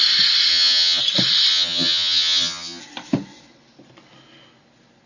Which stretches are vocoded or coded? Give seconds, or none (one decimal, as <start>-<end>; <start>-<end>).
0.5-1.0; 1.5-2.8